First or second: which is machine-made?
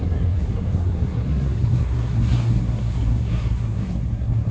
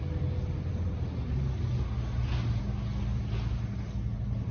first